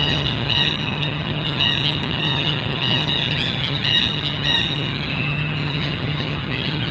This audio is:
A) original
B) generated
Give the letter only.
B